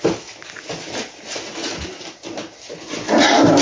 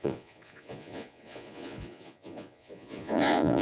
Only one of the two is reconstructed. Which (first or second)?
second